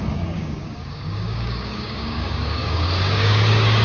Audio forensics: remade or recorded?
remade